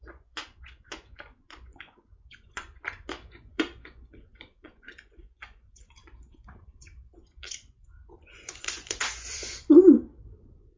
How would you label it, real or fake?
fake